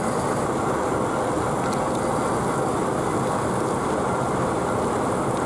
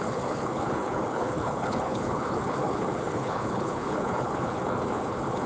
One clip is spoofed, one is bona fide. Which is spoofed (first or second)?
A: second